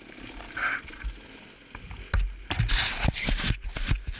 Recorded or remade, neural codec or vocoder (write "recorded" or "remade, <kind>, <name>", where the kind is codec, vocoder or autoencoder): recorded